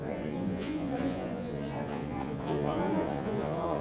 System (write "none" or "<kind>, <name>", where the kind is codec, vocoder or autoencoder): vocoder, Vocos